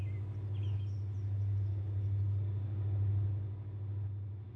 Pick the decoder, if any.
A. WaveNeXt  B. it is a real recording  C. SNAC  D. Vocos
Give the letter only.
B